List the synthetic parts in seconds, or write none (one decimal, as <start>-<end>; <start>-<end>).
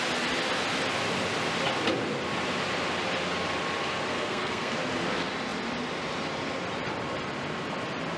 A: 4.1-4.7